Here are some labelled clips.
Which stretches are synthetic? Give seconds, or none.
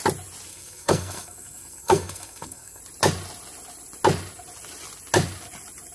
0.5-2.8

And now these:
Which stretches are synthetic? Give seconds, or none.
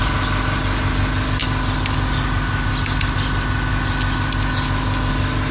none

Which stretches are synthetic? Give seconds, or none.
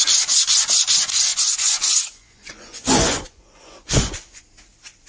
1.3-4.4